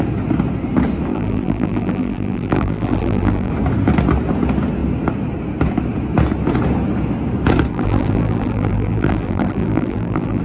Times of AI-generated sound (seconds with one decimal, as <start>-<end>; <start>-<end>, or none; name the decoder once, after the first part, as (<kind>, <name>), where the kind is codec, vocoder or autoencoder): 1.1-3.5 (vocoder, BigVGAN v2); 7.7-10.4